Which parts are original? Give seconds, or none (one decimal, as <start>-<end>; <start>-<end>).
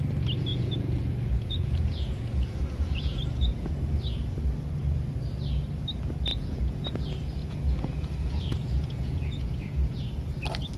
0.0-0.5; 3.7-6.3; 7.0-7.4; 10.0-10.8